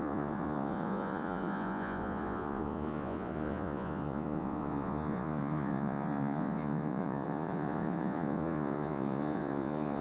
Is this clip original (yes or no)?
no